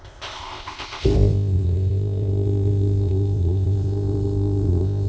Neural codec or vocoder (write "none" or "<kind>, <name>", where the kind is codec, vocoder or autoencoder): codec, ZipCodec